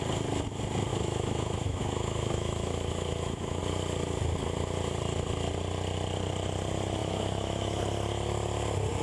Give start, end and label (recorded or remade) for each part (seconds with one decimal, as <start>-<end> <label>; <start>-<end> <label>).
0.0-0.9 recorded; 0.9-3.6 remade; 3.6-7.0 recorded; 7.0-7.8 remade; 7.8-9.0 recorded